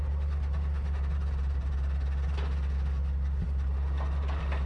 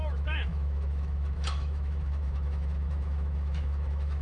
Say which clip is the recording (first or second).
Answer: first